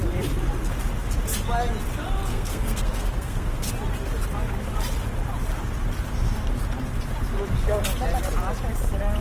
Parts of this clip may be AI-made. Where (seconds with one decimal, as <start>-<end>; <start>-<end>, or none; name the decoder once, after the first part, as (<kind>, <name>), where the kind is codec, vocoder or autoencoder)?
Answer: 2.3-3.7 (codec, SNAC)